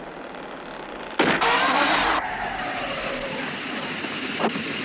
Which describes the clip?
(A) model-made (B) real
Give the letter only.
B